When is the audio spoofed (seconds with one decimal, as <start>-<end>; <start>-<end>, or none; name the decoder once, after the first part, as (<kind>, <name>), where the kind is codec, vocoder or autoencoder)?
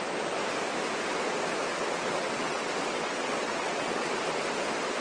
1.7-4.1 (vocoder, WaveNeXt)